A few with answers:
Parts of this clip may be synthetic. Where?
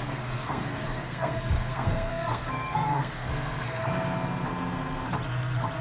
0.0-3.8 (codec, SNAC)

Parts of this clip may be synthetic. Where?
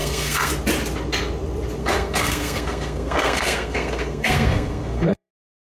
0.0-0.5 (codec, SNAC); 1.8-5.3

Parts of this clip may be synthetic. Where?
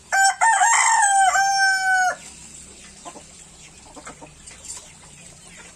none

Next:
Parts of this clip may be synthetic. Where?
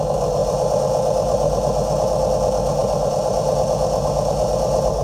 none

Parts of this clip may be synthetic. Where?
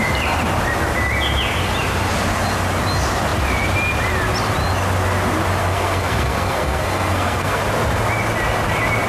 5.6-7.6 (codec, SNAC)